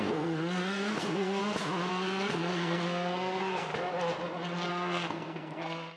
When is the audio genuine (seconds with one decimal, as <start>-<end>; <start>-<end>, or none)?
1.4-1.9; 3.7-4.7